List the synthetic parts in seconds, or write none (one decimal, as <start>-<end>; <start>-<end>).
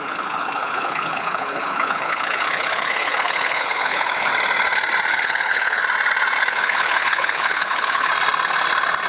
0.0-4.3; 5.1-5.8; 6.4-8.1